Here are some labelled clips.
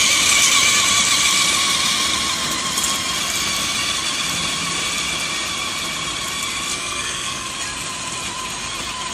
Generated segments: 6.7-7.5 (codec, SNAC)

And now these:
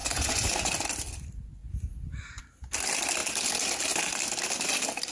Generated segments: 0.0-0.7 (vocoder, Vocos)

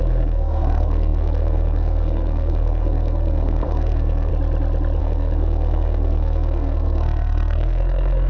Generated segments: 0.0-4.3 (codec, SNAC); 5.0-8.3

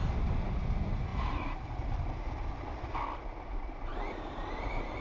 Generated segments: none

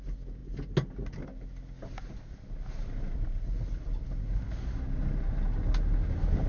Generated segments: none